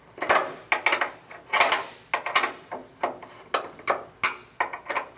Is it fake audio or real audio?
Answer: real